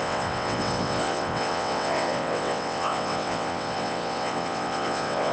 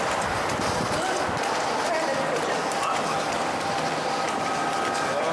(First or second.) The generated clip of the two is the first